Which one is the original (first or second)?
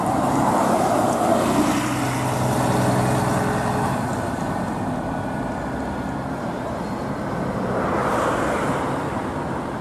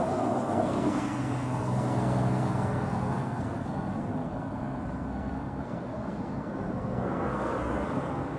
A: first